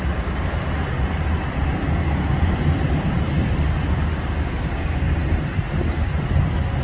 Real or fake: real